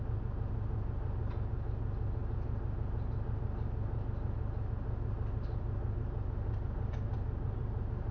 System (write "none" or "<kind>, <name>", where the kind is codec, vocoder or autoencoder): none